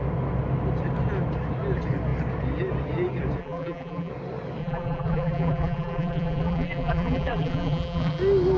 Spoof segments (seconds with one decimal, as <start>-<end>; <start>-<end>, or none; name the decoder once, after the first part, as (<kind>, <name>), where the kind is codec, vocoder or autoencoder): 3.4-4.1 (vocoder, BigVGAN v2); 4.6-8.2